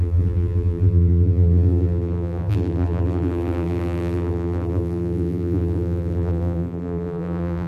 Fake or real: fake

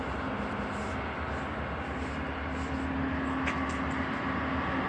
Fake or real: real